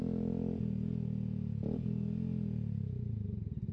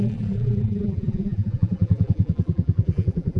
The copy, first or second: second